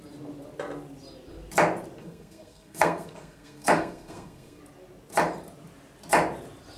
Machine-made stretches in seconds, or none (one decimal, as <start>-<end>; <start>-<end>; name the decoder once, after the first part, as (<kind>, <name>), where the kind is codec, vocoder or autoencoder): 2.0-4.6 (codec, SNAC)